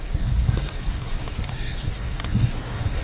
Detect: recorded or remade remade